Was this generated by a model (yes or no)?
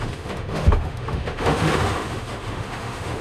yes